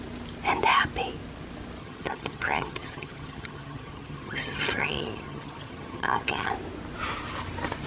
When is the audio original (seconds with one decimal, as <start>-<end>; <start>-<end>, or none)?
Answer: 0.0-1.8; 6.5-7.9